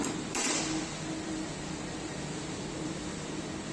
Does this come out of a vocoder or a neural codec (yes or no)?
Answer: yes